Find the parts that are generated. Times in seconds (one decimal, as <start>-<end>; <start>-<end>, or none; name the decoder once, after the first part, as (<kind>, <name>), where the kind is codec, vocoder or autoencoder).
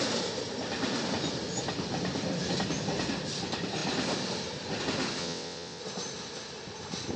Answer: 5.2-5.8 (vocoder, WaveNeXt)